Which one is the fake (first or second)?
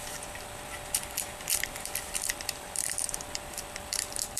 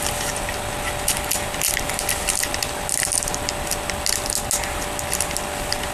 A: first